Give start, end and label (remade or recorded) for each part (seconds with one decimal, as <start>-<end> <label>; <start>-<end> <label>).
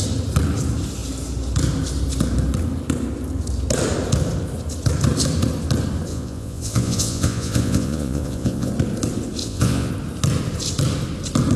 0.0-6.1 recorded; 6.1-8.7 remade; 8.7-9.4 recorded; 9.4-9.9 remade; 9.9-11.6 recorded